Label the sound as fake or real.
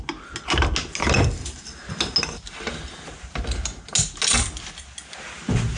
real